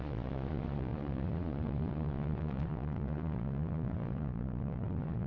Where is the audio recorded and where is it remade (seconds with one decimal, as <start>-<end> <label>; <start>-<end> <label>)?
0.0-5.3 remade